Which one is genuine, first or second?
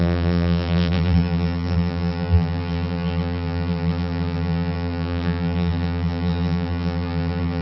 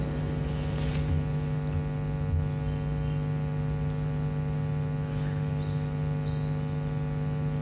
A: second